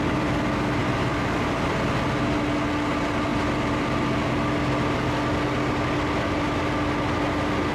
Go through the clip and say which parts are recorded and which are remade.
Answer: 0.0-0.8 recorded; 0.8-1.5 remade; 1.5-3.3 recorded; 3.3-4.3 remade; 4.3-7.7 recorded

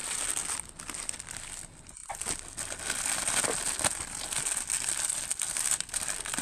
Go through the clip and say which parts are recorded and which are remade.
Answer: 0.0-6.4 recorded